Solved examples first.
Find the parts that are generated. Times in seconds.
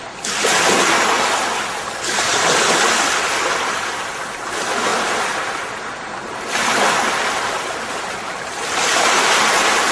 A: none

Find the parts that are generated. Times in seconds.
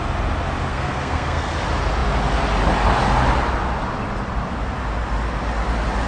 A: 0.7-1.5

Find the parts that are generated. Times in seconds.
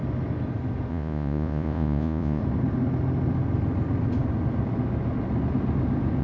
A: 0.9-2.4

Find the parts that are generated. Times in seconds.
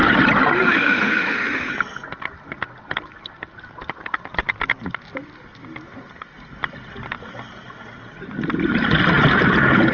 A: 0.7-1.7